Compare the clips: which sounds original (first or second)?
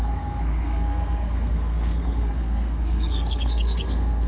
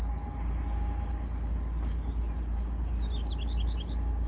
second